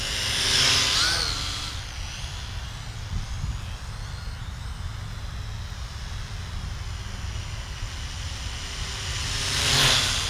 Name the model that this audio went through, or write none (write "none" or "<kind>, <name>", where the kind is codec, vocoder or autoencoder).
none